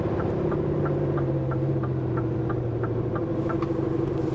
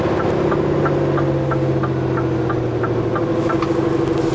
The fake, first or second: first